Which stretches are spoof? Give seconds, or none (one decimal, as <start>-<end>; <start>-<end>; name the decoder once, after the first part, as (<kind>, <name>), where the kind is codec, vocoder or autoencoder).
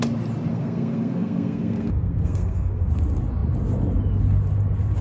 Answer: 0.5-2.9 (codec, SNAC)